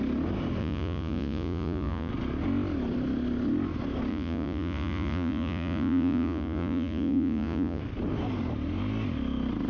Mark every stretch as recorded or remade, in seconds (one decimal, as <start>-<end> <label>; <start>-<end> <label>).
0.0-0.6 recorded; 0.6-2.1 remade; 2.1-4.1 recorded; 4.1-7.8 remade; 7.8-9.7 recorded

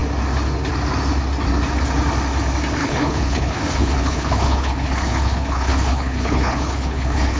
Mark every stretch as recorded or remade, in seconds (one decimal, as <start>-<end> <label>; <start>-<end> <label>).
0.0-2.8 recorded; 2.8-7.4 remade